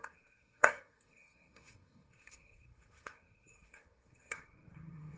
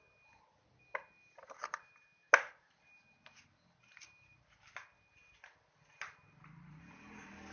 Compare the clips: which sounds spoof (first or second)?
first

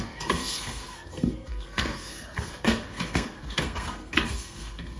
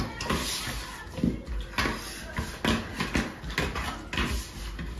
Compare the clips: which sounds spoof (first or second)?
first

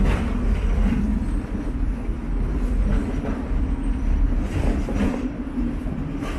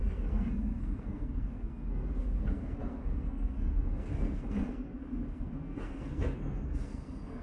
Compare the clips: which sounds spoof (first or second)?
second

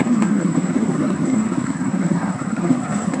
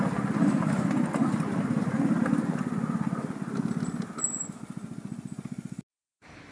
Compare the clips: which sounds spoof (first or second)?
first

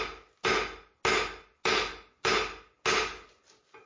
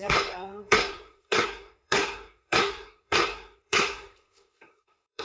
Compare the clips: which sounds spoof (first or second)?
second